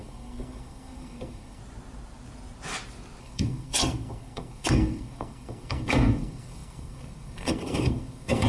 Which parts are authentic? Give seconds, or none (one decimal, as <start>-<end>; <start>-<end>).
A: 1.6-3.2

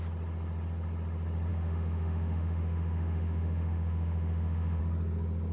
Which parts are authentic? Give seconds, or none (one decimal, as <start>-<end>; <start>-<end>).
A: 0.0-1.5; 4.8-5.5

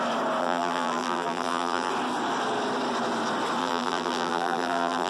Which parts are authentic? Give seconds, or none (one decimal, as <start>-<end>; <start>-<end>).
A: 0.0-0.4; 1.9-3.6